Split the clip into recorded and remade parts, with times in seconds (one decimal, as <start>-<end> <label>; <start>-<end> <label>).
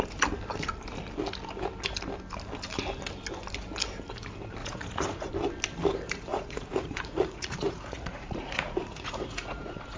0.0-4.6 recorded; 4.6-5.3 remade; 5.3-6.3 recorded; 6.3-10.0 remade